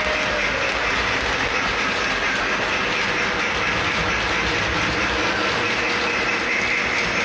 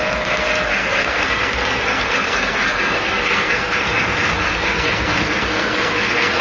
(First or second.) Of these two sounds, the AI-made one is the second